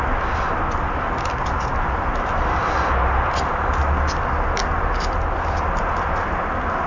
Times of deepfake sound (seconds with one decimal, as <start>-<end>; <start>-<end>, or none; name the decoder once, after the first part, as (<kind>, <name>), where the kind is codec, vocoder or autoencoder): none